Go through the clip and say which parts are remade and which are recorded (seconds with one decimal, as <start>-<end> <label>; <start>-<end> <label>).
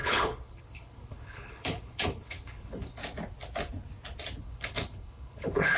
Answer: 0.0-3.0 remade; 3.0-4.4 recorded; 4.4-5.8 remade